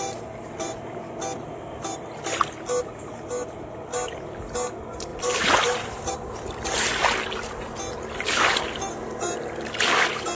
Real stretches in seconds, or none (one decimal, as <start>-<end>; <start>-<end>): 0.0-5.1; 6.1-10.3